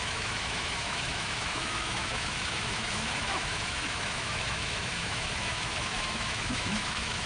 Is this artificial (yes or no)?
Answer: yes